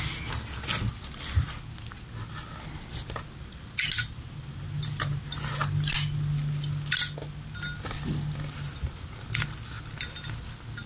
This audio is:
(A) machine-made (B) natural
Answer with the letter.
B